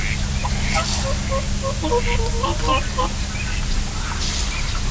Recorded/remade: recorded